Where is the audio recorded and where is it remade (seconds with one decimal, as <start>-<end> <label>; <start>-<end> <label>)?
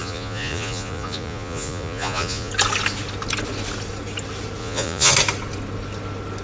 0.0-2.5 remade; 2.5-4.6 recorded; 4.6-5.1 remade; 5.1-6.4 recorded